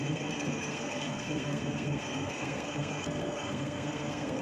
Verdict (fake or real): fake